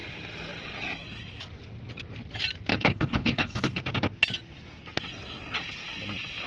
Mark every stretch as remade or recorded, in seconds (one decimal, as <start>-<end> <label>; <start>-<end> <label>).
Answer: 0.0-2.7 recorded; 2.7-3.8 remade; 3.8-6.5 recorded